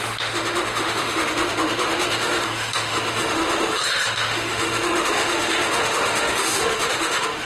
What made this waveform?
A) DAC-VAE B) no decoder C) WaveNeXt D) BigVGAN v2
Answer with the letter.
A